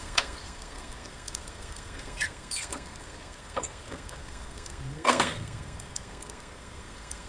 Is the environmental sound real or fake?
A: fake